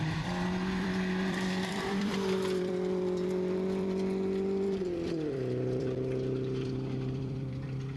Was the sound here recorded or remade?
remade